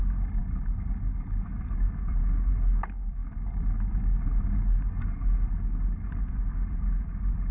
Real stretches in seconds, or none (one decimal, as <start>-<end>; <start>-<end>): 0.0-7.5